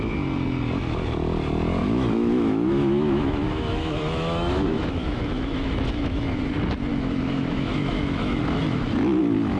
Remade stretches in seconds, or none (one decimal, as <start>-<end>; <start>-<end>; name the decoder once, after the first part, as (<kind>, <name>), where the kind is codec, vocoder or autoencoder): 1.8-6.4 (autoencoder, DAC-VAE); 6.9-9.2